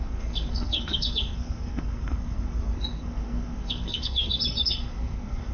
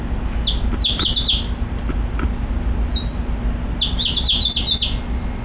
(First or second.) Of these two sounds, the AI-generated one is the first